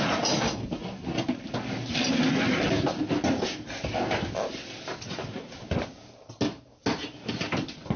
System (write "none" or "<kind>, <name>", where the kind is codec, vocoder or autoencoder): none